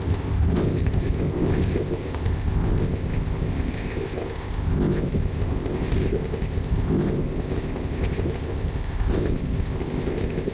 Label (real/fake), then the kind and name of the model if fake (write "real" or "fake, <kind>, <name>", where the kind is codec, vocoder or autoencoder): fake, codec, ZipCodec